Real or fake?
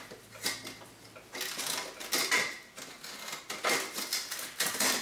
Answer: real